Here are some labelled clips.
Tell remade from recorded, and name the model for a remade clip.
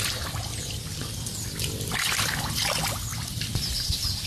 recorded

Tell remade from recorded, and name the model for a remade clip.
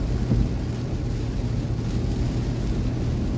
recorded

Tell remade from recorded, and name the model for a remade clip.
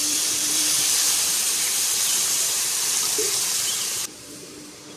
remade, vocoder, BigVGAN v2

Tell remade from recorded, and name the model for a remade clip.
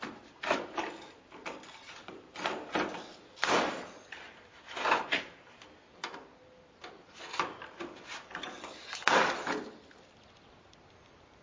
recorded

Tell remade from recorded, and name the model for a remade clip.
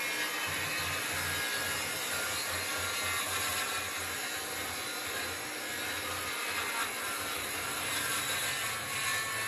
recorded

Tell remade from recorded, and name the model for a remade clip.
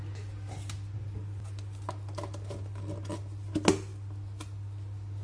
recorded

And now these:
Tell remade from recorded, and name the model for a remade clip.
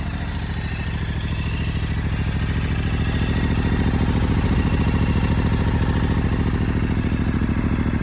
recorded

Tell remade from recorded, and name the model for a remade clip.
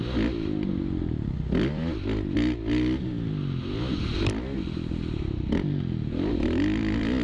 recorded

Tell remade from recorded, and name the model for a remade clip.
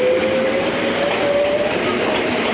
recorded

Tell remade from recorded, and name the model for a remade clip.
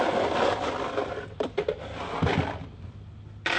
recorded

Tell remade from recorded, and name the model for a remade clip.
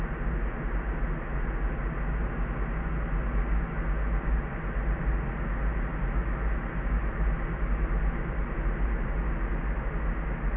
recorded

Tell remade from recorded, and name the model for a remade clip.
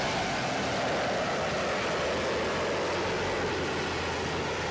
recorded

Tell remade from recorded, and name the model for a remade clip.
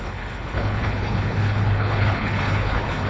remade, codec, HILCodec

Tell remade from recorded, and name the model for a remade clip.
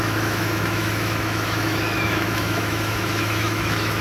remade, autoencoder, DAC-VAE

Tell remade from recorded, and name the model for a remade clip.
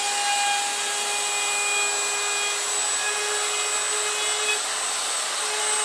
recorded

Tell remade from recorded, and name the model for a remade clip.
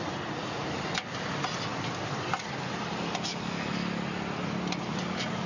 recorded